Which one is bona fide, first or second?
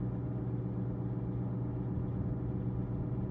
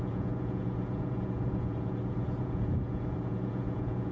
first